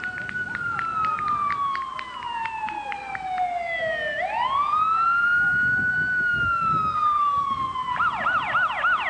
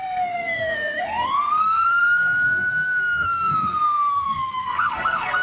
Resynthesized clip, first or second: second